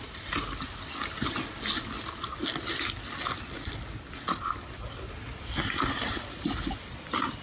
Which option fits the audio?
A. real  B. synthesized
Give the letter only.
A